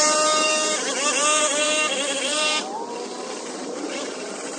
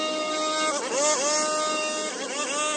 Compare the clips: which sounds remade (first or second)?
first